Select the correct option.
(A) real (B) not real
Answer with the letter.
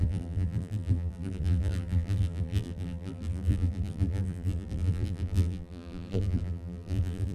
B